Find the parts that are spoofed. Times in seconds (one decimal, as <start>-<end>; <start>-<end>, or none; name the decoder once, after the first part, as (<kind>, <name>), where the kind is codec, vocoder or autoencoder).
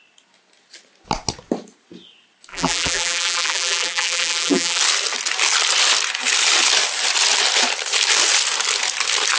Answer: 2.5-4.8 (vocoder, BigVGAN v2)